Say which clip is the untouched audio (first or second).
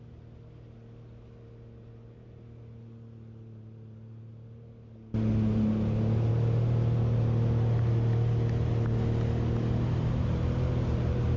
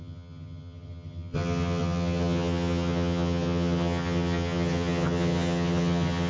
first